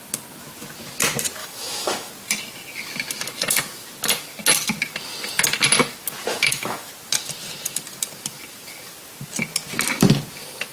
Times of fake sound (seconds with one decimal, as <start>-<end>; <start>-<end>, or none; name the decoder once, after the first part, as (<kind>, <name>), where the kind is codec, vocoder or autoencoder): 1.4-2.1 (autoencoder, DAC-VAE); 6.3-6.9